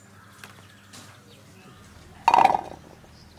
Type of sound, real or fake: real